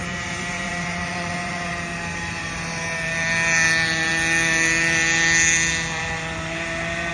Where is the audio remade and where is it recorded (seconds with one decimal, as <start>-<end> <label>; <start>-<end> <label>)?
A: 0.0-1.7 remade; 1.7-7.1 recorded